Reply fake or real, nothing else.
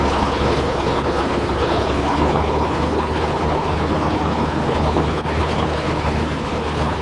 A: fake